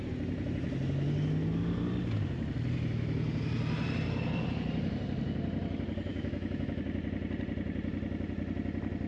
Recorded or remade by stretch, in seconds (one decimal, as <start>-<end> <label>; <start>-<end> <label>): 0.0-6.1 recorded; 6.1-6.8 remade; 6.8-9.1 recorded